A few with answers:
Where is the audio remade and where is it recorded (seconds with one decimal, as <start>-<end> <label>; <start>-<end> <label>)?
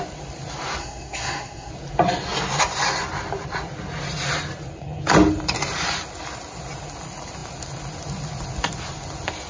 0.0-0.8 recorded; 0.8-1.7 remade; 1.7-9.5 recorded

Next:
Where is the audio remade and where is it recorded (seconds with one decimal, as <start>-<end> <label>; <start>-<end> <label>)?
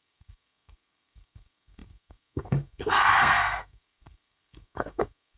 0.0-5.4 remade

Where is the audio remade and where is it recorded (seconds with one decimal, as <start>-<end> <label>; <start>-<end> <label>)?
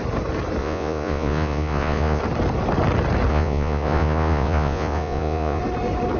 0.0-0.6 recorded; 0.6-2.2 remade; 2.2-3.3 recorded; 3.3-5.6 remade; 5.6-6.2 recorded